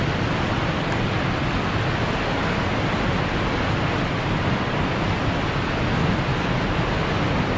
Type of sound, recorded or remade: recorded